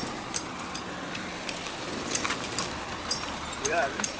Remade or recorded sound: remade